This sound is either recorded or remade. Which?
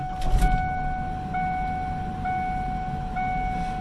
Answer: recorded